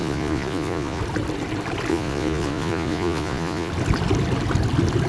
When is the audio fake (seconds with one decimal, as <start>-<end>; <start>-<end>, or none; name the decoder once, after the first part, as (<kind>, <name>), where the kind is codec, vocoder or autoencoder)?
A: 0.0-1.0 (vocoder, Vocos); 1.9-3.7